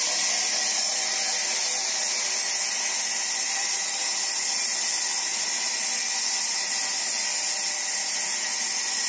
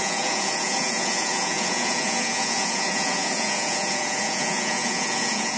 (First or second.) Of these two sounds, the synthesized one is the second